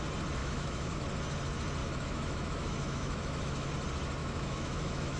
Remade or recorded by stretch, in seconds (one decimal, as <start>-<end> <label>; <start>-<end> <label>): 0.0-0.4 recorded; 0.4-1.0 remade; 1.0-1.8 recorded; 1.8-3.7 remade; 3.7-4.2 recorded; 4.2-5.2 remade